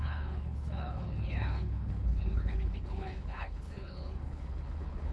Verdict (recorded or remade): remade